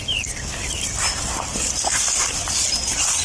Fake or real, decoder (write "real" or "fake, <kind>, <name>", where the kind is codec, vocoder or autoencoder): real